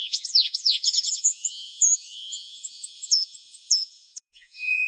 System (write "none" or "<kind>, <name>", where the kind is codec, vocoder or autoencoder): vocoder, Vocos